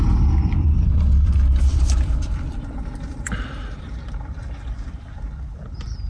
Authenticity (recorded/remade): remade